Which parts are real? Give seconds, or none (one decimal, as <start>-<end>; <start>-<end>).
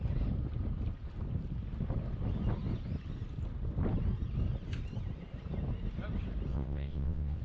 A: 0.0-6.5